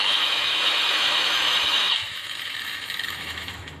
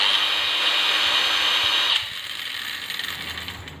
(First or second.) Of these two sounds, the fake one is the first